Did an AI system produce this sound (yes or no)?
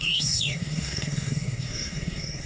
yes